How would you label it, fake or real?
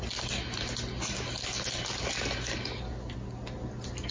real